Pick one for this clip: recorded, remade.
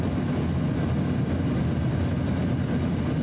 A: recorded